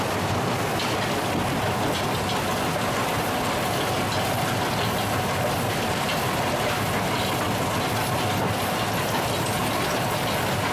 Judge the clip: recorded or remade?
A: recorded